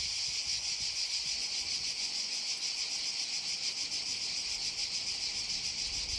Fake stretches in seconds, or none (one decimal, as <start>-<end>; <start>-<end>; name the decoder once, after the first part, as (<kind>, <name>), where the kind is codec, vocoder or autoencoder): 0.5-2.9 (vocoder, Vocos)